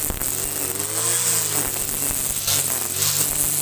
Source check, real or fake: real